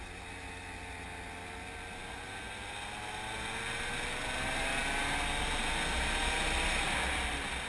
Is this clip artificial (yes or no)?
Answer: no